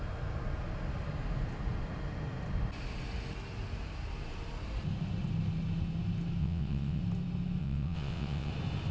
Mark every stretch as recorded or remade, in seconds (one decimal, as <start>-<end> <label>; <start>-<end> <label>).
0.0-6.4 recorded; 6.4-7.0 remade; 7.0-7.6 recorded; 7.6-8.5 remade; 8.5-8.9 recorded